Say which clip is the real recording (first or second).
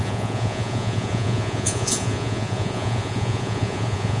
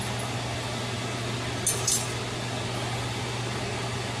second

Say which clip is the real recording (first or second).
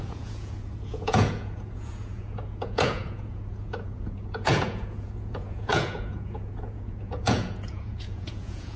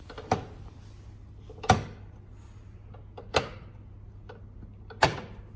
second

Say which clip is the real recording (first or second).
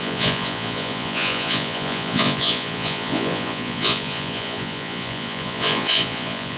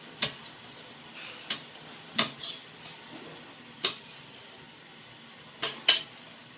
second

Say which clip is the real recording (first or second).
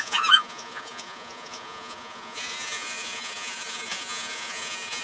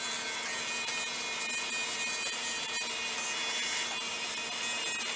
second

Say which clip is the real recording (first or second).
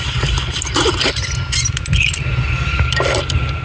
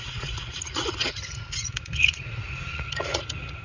first